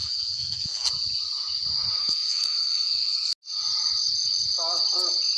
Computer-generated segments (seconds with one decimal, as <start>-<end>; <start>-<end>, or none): 0.0-0.9; 2.0-3.3